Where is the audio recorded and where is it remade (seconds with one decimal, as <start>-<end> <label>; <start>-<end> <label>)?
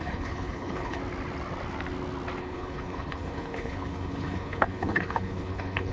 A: 0.0-1.0 remade; 1.0-2.4 recorded; 2.4-5.9 remade